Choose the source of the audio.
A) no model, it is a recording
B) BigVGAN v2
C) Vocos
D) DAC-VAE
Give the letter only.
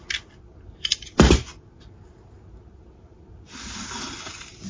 A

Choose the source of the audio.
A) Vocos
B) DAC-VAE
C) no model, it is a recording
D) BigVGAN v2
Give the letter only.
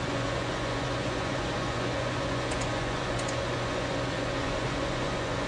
A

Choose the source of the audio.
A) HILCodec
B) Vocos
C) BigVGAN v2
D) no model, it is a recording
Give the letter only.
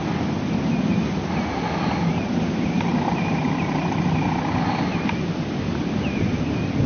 D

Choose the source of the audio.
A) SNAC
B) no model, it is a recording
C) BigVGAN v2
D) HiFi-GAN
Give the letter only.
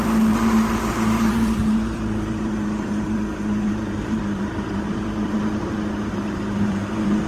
C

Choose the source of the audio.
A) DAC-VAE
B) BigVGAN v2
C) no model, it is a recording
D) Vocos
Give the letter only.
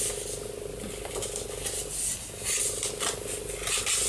C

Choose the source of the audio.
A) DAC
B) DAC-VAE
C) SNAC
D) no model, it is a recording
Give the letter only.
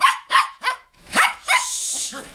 B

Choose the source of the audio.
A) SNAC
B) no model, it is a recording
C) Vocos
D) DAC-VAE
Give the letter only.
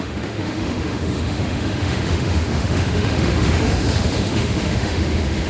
D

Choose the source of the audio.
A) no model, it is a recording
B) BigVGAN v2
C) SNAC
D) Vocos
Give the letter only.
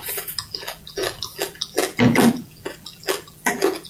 B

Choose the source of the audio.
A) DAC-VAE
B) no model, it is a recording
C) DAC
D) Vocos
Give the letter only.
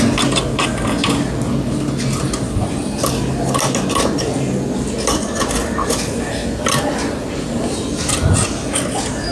B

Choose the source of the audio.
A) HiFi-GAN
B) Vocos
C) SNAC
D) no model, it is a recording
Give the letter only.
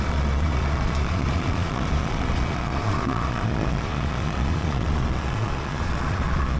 B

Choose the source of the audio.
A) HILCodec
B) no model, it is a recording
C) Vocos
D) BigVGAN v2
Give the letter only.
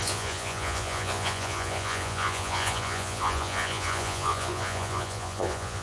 C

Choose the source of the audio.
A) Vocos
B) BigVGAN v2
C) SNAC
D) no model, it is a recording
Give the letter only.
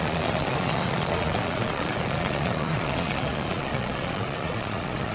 A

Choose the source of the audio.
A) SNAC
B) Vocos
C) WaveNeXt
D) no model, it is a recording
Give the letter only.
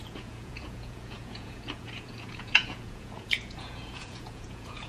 B